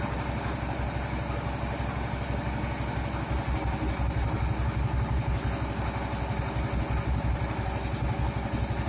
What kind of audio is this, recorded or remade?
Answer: recorded